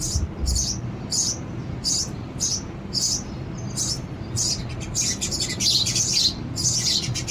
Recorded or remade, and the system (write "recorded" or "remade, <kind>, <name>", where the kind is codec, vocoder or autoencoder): recorded